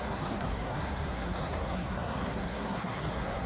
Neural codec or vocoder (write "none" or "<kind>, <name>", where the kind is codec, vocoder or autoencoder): codec, SNAC